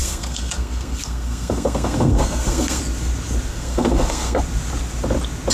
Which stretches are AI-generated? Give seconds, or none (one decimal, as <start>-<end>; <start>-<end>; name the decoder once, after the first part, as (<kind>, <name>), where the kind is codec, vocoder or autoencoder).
0.0-2.8 (codec, SNAC); 3.5-4.4